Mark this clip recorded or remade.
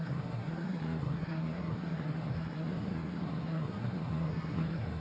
remade